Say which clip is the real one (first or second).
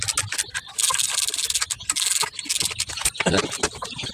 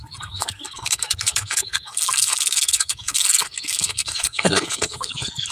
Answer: first